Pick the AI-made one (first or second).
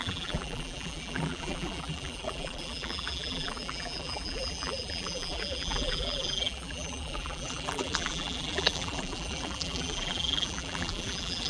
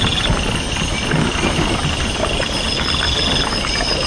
first